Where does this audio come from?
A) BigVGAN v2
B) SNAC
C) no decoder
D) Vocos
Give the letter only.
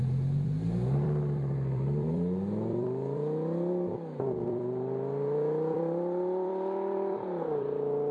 A